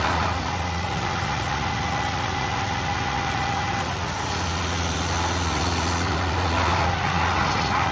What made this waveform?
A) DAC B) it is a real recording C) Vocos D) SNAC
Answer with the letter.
C